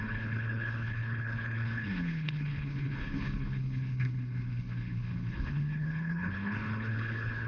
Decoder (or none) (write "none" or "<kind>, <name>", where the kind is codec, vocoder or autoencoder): codec, HILCodec